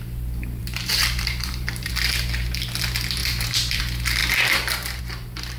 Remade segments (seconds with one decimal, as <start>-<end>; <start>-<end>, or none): 0.6-1.9; 3.2-3.8